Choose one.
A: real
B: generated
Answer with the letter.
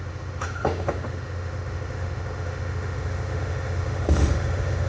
B